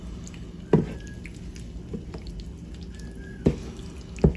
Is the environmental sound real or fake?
real